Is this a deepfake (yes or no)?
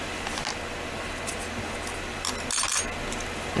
no